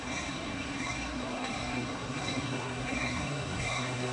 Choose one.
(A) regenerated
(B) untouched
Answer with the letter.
A